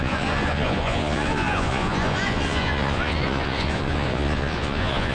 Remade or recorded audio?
remade